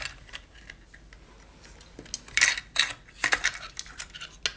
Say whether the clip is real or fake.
real